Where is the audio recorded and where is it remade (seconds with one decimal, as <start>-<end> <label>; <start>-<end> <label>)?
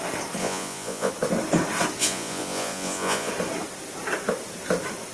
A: 0.0-0.4 recorded; 0.4-1.1 remade; 1.1-2.0 recorded; 2.0-3.3 remade; 3.3-5.1 recorded